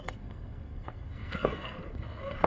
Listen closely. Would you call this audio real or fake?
fake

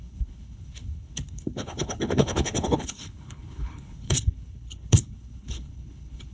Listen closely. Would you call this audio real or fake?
fake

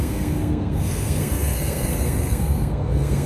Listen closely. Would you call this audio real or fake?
fake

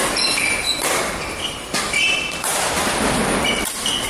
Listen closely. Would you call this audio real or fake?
real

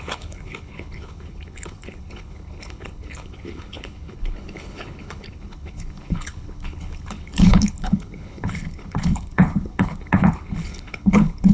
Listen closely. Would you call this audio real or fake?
fake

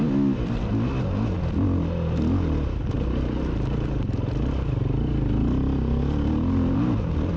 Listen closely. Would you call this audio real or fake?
real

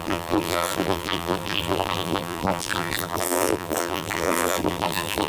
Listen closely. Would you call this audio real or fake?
fake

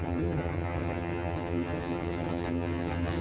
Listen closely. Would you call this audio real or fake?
fake